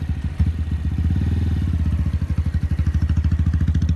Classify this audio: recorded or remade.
recorded